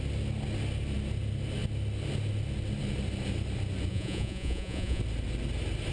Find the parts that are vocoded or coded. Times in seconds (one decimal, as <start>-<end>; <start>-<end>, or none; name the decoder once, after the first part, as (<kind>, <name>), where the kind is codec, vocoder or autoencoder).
3.9-5.0 (vocoder, Vocos)